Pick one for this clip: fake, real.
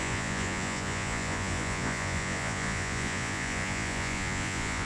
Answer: fake